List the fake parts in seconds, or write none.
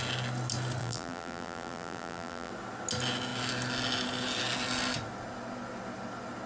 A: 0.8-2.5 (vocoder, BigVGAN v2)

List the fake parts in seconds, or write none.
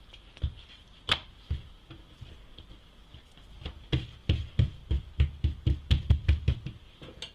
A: none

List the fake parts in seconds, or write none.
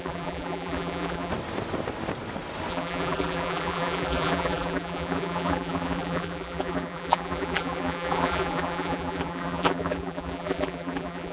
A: 0.0-1.3 (vocoder, BigVGAN v2); 2.7-11.3